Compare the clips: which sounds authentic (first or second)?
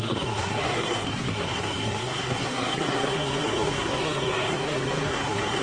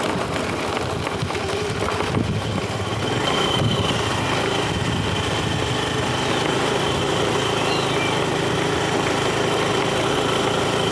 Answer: second